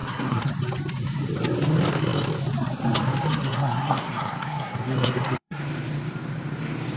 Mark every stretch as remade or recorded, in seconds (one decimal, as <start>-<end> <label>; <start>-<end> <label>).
0.0-0.5 remade; 0.5-3.4 recorded; 3.4-5.6 remade; 5.6-7.0 recorded